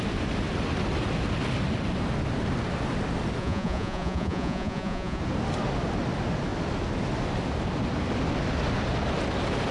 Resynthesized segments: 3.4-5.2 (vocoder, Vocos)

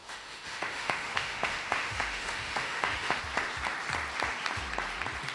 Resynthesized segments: 0.0-3.2 (autoencoder, DAC-VAE)

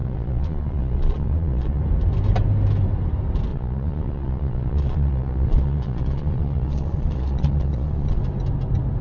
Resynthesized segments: 0.0-1.8 (vocoder, Vocos); 3.5-8.2

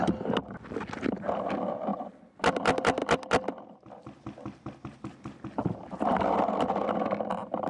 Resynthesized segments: none

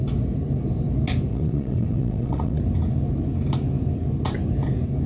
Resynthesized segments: 1.3-2.6 (vocoder, Vocos)

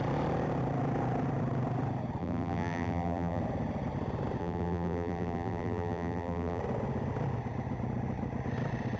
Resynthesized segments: 2.2-3.4 (vocoder, BigVGAN v2); 4.4-6.6

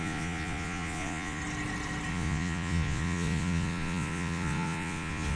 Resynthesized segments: 0.0-1.4 (vocoder, Vocos); 2.1-5.4

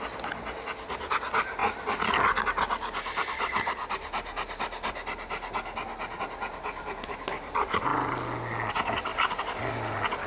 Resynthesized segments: none